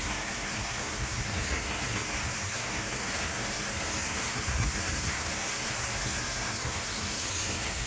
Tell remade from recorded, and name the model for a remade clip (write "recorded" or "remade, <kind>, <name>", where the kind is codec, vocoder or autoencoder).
remade, codec, SNAC